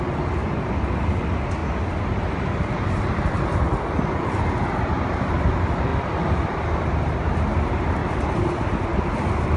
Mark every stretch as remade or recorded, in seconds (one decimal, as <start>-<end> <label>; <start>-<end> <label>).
0.0-8.0 recorded; 8.0-9.0 remade; 9.0-9.6 recorded